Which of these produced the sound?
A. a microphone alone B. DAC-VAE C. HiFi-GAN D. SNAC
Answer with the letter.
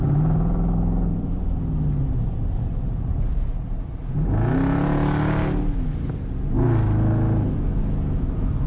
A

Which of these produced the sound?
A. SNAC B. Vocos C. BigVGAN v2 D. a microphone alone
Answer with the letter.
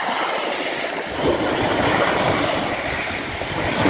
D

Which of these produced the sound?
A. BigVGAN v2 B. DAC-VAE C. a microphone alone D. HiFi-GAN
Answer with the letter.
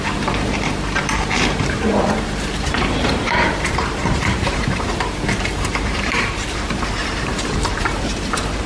A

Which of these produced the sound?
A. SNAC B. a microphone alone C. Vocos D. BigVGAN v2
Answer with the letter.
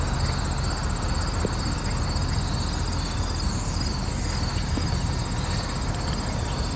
B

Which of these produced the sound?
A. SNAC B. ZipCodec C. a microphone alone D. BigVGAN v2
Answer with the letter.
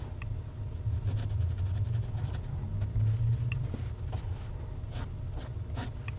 C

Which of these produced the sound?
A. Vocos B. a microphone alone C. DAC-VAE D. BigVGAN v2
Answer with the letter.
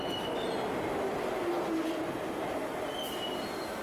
B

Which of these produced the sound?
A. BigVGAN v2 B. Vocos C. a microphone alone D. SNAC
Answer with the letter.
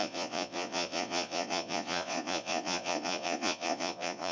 B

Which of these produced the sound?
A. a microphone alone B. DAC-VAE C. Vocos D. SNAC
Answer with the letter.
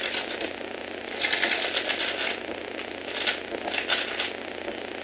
A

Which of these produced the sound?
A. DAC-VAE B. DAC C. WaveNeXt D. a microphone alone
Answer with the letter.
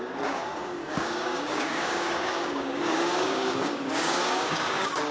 B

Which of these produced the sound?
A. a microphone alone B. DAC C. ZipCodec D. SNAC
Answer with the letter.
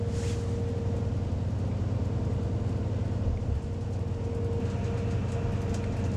A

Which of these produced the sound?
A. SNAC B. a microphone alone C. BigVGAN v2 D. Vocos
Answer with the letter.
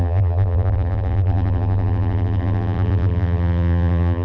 C